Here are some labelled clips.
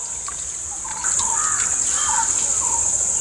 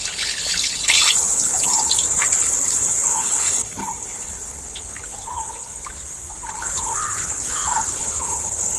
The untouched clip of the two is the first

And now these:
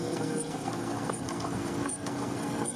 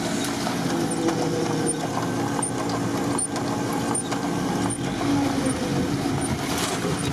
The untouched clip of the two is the second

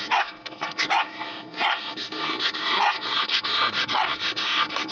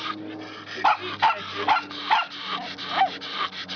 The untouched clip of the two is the second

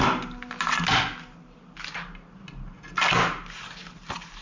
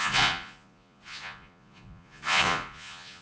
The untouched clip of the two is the first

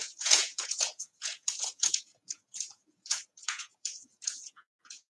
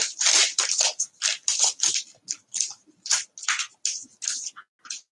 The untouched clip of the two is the second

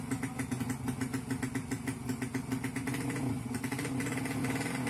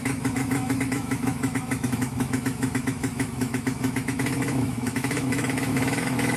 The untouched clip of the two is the first